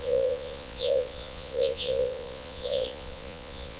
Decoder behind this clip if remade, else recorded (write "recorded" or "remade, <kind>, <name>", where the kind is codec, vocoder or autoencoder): remade, vocoder, Vocos